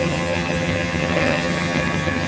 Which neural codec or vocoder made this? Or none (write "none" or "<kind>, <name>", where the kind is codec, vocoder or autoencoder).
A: vocoder, HiFi-GAN